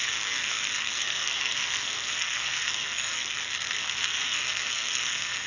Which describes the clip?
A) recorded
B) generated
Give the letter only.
B